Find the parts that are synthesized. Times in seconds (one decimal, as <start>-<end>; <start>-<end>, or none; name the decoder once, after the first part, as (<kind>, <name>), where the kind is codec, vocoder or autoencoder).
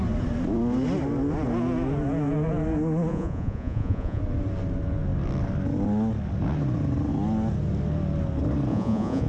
3.1-4.2 (vocoder, Vocos); 8.7-9.3